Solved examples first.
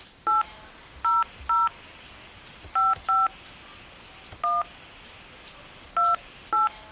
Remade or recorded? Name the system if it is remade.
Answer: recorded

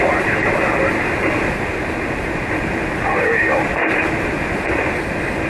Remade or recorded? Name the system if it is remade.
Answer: recorded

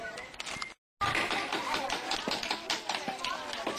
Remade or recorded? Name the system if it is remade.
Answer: recorded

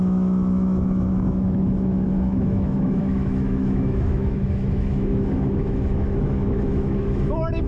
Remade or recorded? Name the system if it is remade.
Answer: remade, autoencoder, DAC-VAE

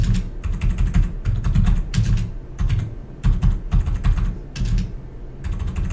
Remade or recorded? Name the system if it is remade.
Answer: recorded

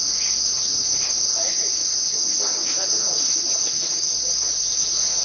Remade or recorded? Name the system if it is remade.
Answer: remade, autoencoder, DAC-VAE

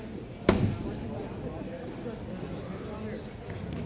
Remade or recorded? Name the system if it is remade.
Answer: recorded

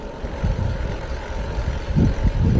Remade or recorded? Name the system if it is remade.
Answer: recorded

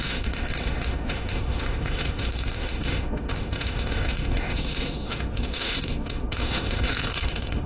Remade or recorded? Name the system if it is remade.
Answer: remade, autoencoder, DAC-VAE